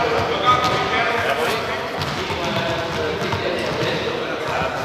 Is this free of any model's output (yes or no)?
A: yes